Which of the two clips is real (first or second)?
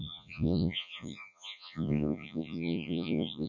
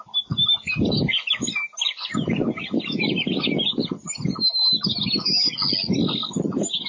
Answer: second